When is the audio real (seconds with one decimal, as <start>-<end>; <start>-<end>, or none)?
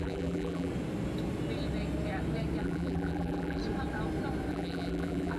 0.7-2.6; 3.6-4.5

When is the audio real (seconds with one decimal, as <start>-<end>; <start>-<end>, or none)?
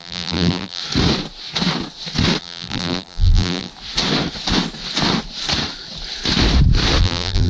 0.8-2.4; 3.7-7.0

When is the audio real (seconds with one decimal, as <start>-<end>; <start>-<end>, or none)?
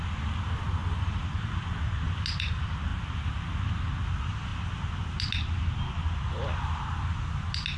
0.0-7.8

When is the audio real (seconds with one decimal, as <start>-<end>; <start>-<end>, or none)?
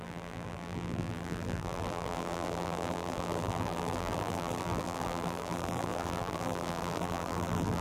none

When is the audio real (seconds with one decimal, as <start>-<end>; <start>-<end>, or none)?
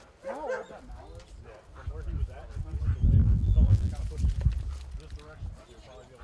0.0-3.2; 3.9-6.2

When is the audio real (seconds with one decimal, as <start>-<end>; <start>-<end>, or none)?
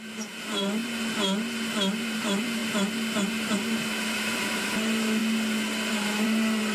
0.8-2.0; 2.6-3.3; 5.2-5.9